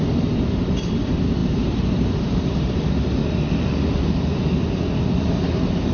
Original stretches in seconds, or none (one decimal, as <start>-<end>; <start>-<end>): 0.0-1.4; 2.8-5.9